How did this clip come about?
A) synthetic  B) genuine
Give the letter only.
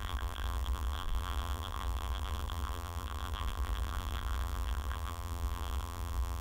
A